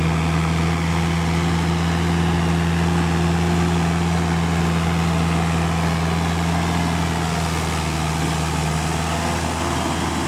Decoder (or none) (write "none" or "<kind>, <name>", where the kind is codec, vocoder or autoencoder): none